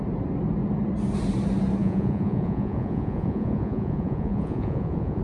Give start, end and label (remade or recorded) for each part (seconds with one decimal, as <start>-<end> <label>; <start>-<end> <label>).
0.0-1.8 recorded; 1.8-5.2 remade